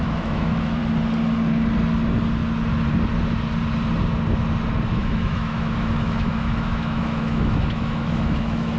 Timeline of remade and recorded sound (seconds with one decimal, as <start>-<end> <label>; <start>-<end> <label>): 0.0-0.8 remade; 0.8-4.9 recorded; 4.9-8.8 remade